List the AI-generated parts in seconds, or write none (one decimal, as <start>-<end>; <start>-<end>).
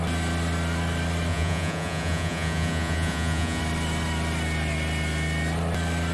1.3-3.6